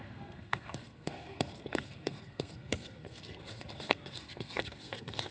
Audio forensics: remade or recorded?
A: remade